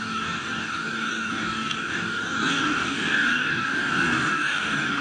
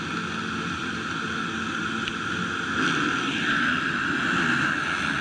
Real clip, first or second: second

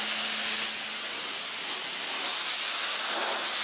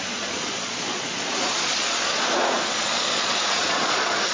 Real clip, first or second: first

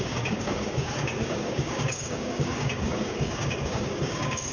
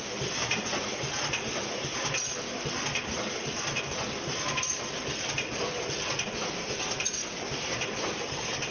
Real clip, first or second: second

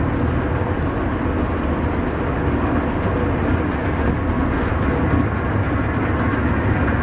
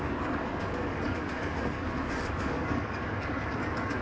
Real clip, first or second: first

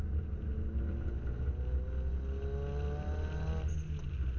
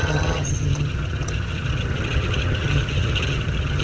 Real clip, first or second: first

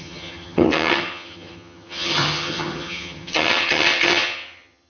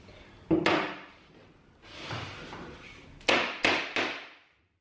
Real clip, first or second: second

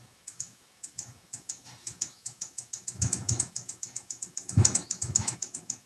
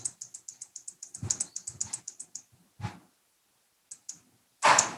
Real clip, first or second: second